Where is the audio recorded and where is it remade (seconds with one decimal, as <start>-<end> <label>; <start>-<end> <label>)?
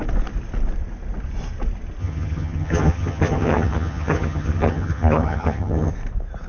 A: 0.0-2.0 recorded; 2.0-5.9 remade; 5.9-6.5 recorded